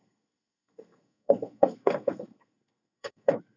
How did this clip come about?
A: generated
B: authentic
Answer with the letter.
A